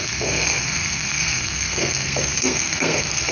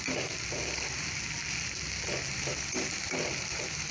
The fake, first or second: first